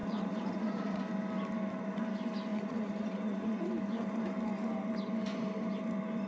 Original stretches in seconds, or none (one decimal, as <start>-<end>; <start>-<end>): 1.0-2.5; 3.7-6.3